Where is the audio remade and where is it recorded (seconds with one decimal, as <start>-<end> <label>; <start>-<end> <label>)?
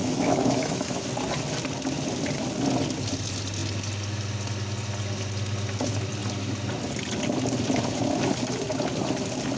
0.0-1.0 remade; 1.0-9.6 recorded